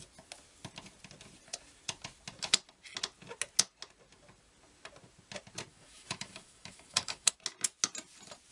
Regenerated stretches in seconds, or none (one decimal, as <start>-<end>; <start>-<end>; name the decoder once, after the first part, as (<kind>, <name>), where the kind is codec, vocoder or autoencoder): 5.7-7.3 (autoencoder, DAC-VAE)